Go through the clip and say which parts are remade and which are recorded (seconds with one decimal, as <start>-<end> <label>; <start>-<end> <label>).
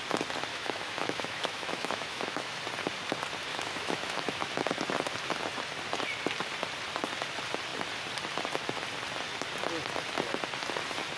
0.0-0.5 recorded; 0.5-2.6 remade; 2.6-3.5 recorded; 3.5-4.6 remade; 4.6-11.2 recorded